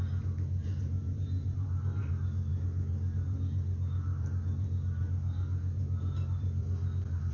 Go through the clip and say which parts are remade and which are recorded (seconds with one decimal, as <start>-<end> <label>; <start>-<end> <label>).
0.0-0.6 recorded; 0.6-2.1 remade; 2.1-7.3 recorded